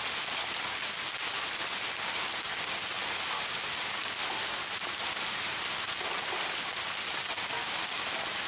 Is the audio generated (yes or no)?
no